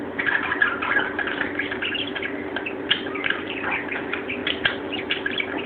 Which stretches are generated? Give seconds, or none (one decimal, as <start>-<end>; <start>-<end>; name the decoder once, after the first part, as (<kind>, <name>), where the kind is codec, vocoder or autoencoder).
0.0-5.7 (vocoder, BigVGAN v2)